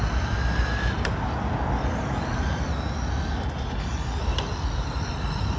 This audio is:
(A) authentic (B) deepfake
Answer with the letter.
A